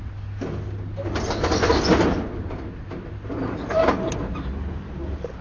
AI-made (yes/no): no